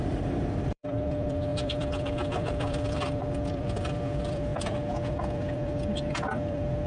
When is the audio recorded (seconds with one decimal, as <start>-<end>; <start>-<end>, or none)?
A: 4.5-5.1